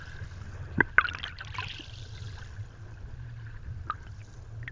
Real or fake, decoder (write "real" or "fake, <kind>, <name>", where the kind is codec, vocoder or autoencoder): real